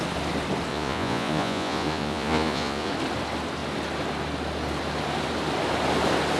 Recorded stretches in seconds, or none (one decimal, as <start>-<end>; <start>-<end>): 0.0-0.7; 2.9-6.4